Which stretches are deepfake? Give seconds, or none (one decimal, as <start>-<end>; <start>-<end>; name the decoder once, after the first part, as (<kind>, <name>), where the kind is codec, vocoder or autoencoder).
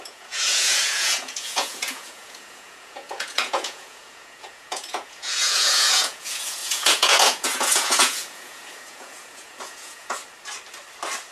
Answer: 0.0-10.2 (vocoder, Vocos)